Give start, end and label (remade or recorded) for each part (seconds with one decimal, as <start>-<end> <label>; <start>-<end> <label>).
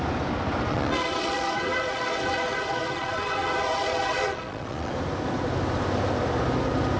0.0-0.7 recorded; 0.7-4.9 remade; 4.9-7.0 recorded